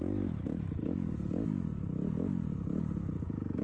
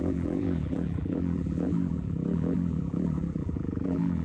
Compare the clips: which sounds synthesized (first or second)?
second